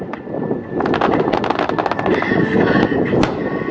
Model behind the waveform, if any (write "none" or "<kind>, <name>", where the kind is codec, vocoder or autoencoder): none